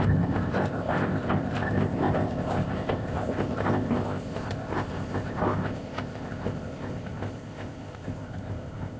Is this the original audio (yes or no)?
no